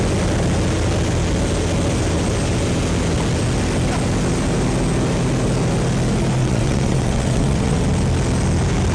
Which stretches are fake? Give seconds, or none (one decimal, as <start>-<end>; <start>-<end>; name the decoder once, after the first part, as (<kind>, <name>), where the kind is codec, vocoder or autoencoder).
6.4-7.8 (vocoder, WaveNeXt)

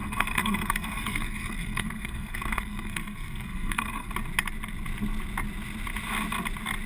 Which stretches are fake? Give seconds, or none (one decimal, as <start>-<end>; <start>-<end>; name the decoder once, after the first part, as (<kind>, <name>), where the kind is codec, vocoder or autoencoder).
0.0-4.1 (codec, SNAC)

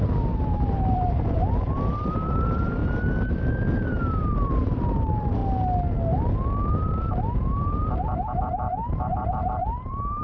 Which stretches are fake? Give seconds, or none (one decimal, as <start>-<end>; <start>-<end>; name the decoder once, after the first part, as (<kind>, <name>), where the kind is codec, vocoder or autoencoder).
0.0-2.8 (vocoder, BigVGAN v2); 3.3-5.4; 6.7-10.2

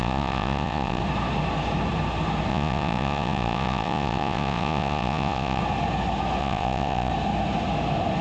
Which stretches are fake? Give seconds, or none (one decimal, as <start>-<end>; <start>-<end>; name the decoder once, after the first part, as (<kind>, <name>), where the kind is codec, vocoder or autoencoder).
0.0-1.0 (vocoder, Vocos); 2.5-5.6; 6.4-7.1